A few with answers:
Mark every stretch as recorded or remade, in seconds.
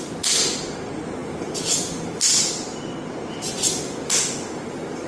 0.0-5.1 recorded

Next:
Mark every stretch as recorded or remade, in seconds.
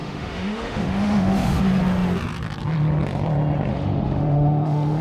0.0-1.6 remade; 1.6-3.7 recorded; 3.7-5.0 remade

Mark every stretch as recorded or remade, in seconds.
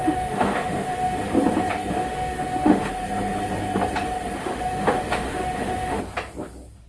0.0-1.2 remade; 1.2-2.0 recorded; 2.0-2.9 remade; 2.9-4.4 recorded; 4.4-6.0 remade; 6.0-6.9 recorded